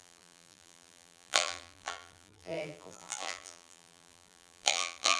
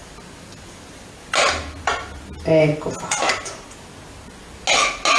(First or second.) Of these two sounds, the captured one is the second